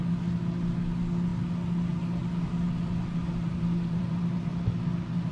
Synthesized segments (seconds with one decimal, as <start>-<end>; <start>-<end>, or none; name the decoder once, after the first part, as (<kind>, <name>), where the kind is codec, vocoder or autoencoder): 3.2-4.1 (vocoder, BigVGAN v2)